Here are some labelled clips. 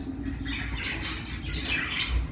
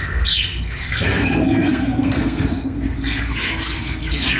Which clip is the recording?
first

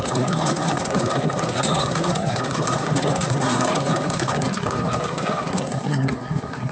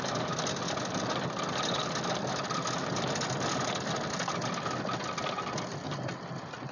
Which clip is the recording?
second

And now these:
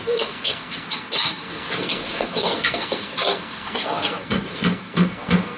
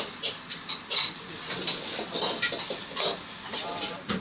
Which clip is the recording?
second